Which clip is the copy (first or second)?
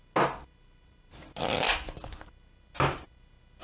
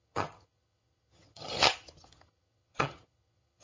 second